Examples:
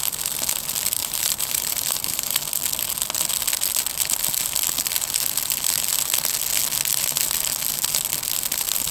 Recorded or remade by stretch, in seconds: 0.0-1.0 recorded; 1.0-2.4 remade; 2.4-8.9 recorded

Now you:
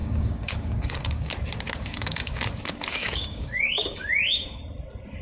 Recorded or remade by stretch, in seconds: 0.0-1.3 remade; 1.3-1.8 recorded; 1.8-2.4 remade; 2.4-2.9 recorded; 2.9-4.6 remade; 4.6-5.2 recorded

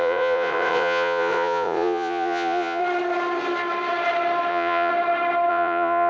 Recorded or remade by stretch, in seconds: 0.0-2.8 remade; 2.8-4.5 recorded; 4.5-4.9 remade; 4.9-5.5 recorded; 5.5-6.1 remade

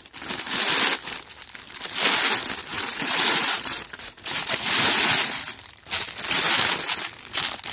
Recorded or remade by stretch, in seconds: 0.0-2.7 recorded; 2.7-5.4 remade; 5.4-7.7 recorded

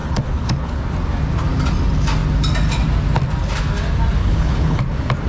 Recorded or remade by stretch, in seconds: 0.0-0.8 remade; 0.8-4.2 recorded; 4.2-4.8 remade; 4.8-5.3 recorded

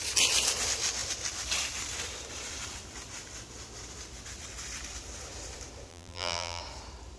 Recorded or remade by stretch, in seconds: 0.0-5.9 recorded; 5.9-6.6 remade; 6.6-7.2 recorded

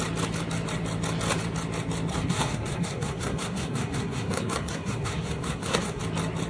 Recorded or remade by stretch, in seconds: 0.0-2.1 recorded; 2.1-6.0 remade; 6.0-6.5 recorded